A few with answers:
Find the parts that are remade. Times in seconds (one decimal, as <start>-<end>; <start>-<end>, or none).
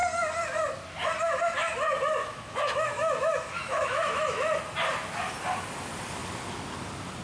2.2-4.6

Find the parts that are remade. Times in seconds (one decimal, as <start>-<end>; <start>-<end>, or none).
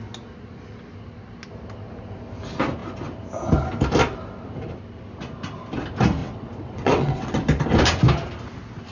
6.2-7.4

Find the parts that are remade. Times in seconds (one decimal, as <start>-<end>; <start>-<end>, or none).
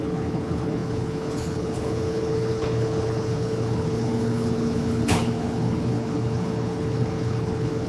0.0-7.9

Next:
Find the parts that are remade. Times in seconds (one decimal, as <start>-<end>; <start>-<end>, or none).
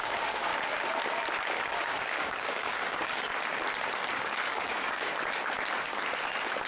0.0-0.5; 1.6-3.3; 4.1-5.1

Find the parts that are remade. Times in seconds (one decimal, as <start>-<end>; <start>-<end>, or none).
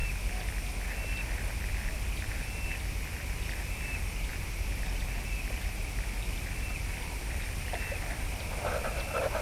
4.3-8.1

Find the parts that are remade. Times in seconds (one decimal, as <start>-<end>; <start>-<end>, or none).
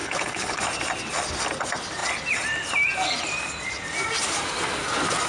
0.0-0.6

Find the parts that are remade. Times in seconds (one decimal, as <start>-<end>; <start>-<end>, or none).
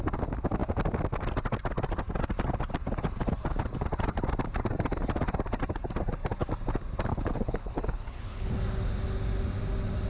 7.1-8.5